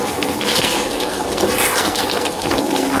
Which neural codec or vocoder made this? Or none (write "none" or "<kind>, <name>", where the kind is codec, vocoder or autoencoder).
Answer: codec, SNAC